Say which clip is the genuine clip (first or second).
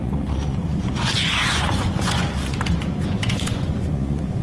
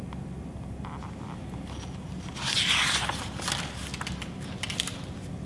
second